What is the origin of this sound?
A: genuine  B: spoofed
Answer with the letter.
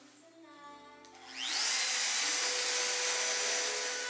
A